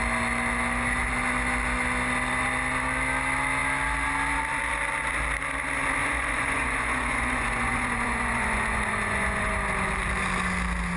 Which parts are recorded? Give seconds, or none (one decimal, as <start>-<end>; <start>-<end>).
0.0-6.0; 9.5-11.0